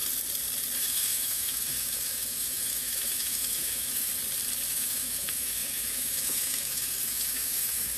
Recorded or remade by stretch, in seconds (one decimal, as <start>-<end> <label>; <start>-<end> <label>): 0.0-0.8 recorded; 0.8-4.1 remade; 4.1-4.7 recorded; 4.7-8.0 remade